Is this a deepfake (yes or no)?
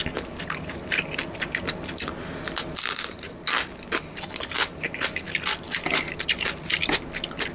no